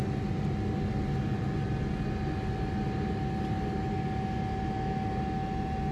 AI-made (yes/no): no